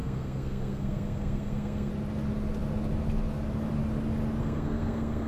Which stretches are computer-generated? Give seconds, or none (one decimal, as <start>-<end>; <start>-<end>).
0.0-1.9; 4.4-5.3